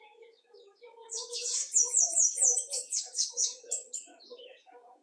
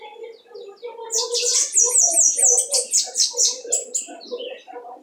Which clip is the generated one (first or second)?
first